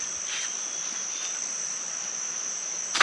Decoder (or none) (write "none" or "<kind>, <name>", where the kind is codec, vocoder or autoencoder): none